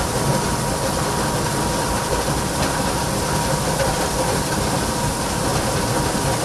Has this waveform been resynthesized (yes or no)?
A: no